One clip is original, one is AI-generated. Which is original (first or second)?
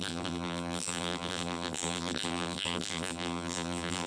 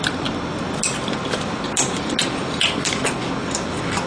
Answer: second